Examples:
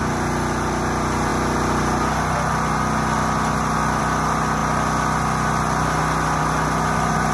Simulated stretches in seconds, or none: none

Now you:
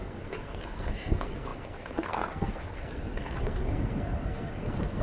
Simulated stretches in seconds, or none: 0.0-5.0 (codec, SNAC)

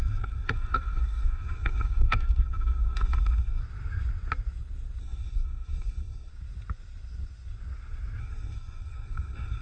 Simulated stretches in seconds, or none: 0.0-3.6 (codec, SNAC); 5.0-6.3; 8.2-9.6

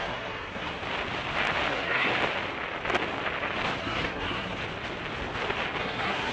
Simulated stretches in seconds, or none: 0.0-0.8 (codec, SNAC); 1.7-2.1; 3.8-4.6; 5.8-6.3

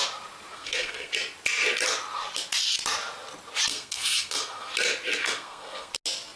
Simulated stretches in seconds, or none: 0.5-1.1 (codec, SNAC); 3.7-4.7; 5.2-5.9

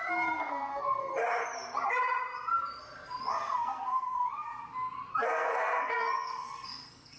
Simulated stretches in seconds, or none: 0.0-1.1 (codec, SNAC); 3.3-4.5; 5.1-7.2

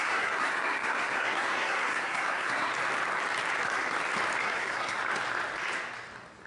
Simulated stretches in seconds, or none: 0.0-2.7 (codec, SNAC); 4.4-5.0

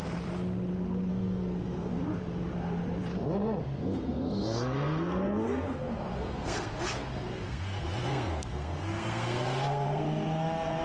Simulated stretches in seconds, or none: 1.1-2.0 (codec, SNAC); 3.6-10.8